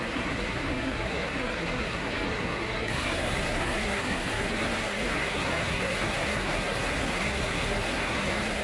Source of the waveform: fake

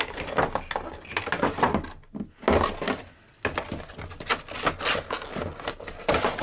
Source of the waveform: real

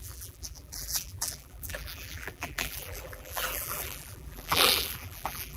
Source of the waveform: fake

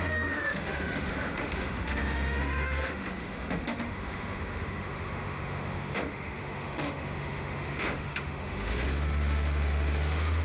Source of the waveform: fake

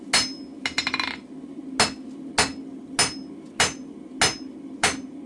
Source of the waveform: real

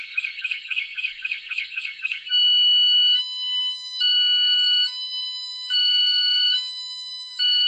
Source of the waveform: fake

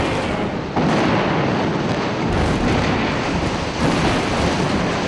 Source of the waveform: real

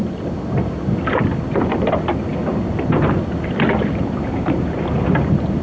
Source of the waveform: real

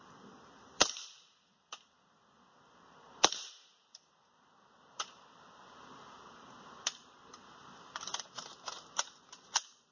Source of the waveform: fake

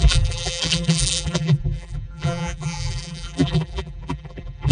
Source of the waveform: fake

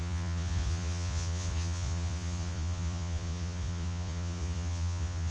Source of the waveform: fake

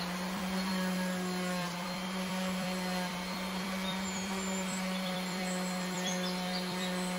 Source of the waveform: fake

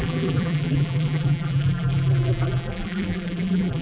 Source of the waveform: fake